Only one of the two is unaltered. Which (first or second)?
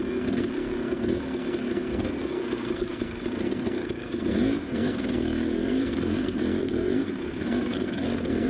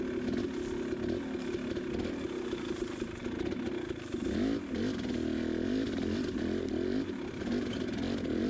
second